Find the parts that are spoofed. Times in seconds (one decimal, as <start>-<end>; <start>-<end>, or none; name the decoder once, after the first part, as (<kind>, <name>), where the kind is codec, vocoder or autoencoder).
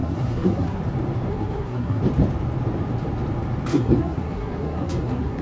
0.0-0.8 (codec, SNAC); 1.3-2.0; 3.7-5.4